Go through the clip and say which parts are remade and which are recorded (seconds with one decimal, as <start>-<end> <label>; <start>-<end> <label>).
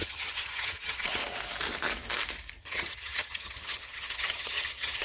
0.0-1.2 remade; 1.2-2.6 recorded; 2.6-5.0 remade